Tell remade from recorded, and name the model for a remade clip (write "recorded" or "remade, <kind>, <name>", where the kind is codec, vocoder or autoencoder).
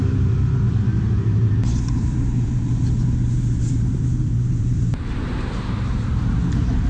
remade, vocoder, BigVGAN v2